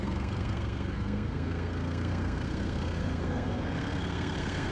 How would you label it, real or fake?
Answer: fake